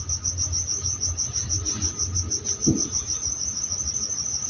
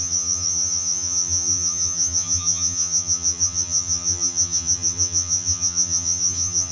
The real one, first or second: first